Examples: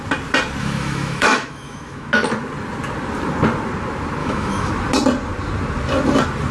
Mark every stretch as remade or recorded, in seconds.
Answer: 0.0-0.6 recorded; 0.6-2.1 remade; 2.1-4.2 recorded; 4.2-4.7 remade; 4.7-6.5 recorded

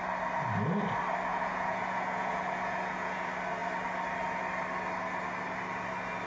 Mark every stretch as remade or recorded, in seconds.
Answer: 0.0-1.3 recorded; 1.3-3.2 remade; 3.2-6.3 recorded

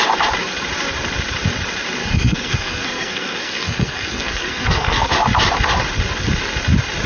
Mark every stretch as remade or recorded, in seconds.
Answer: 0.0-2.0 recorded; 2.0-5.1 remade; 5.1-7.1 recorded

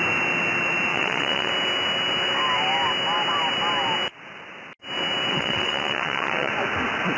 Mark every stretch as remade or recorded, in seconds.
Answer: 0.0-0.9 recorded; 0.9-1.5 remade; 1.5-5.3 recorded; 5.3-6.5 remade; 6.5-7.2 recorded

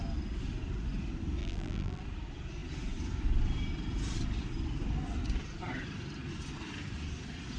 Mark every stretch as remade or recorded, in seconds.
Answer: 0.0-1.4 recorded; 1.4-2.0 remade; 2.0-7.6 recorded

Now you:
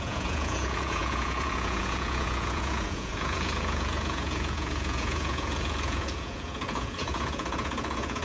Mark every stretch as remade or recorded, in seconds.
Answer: 0.0-8.2 remade